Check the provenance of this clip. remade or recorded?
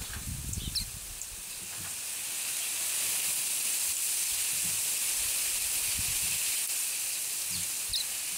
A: recorded